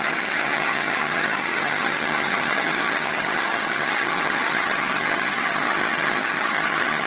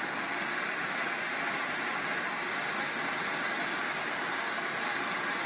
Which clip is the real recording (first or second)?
second